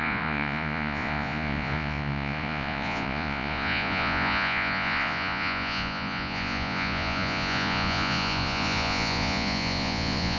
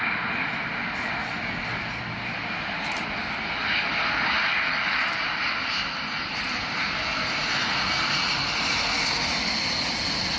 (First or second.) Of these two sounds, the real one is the second